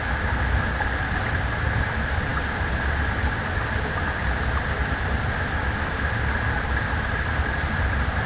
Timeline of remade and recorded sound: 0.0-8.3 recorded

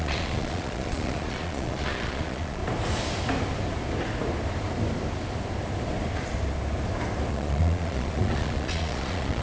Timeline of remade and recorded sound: 0.0-2.6 remade; 2.6-7.3 recorded; 7.3-9.4 remade

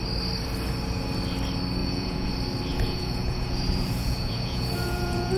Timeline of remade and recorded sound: 0.0-1.8 recorded; 1.8-2.3 remade; 2.3-2.7 recorded; 2.7-5.4 remade

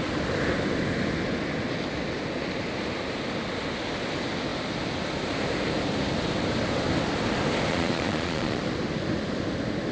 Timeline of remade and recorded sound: 0.0-7.7 recorded; 7.7-8.6 remade; 8.6-9.9 recorded